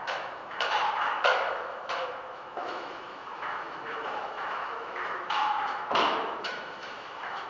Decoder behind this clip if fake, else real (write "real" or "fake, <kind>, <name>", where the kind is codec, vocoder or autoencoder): fake, autoencoder, DAC-VAE